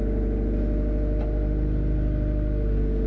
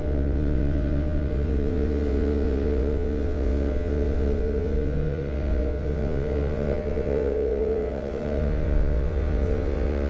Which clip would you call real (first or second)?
first